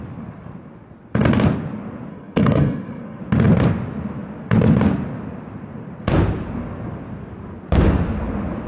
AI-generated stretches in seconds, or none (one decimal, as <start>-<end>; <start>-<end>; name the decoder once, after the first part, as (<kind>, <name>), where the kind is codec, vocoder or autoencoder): 2.1-3.2 (codec, SNAC)